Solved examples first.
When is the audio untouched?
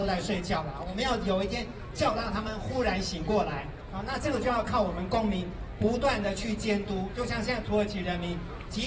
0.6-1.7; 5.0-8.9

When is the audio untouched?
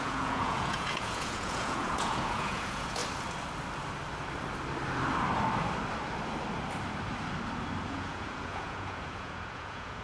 3.0-7.9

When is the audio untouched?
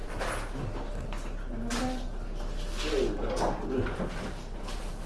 0.0-5.1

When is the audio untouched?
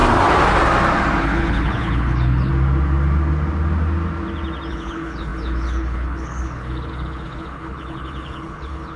0.0-1.2; 2.5-4.7